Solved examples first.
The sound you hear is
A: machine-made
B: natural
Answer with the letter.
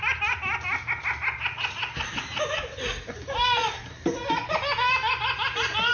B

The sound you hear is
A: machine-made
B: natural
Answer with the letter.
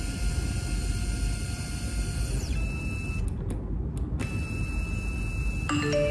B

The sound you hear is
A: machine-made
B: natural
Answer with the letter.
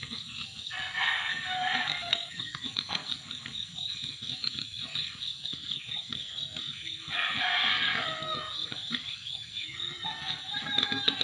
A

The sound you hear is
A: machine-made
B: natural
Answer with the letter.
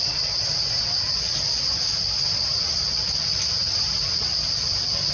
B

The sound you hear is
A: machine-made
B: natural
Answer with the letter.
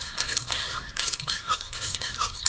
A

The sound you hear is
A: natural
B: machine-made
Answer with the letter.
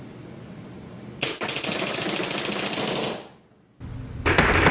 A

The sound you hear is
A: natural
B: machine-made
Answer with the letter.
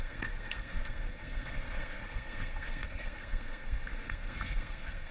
B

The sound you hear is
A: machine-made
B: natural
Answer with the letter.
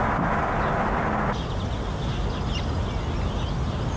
B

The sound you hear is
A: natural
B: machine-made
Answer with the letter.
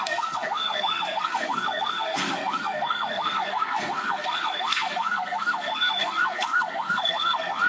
B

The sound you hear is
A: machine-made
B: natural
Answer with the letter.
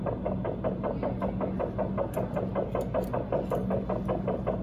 B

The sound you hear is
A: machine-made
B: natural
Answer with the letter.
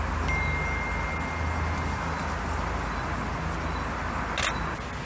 B